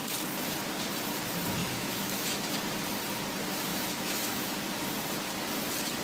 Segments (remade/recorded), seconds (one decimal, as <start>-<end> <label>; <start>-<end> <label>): 0.0-1.6 recorded; 1.6-2.3 remade; 2.3-3.7 recorded; 3.7-4.5 remade; 4.5-6.0 recorded